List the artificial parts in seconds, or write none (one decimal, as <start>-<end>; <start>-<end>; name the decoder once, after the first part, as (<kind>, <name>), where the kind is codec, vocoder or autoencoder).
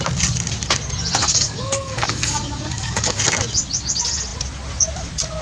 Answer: 1.2-3.2 (codec, DAC)